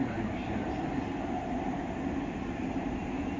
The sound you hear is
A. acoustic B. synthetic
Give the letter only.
B